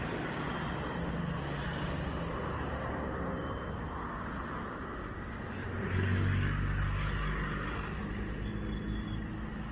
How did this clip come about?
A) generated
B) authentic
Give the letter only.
B